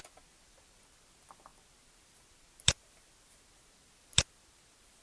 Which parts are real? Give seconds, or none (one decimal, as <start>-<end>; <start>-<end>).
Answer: 0.0-5.0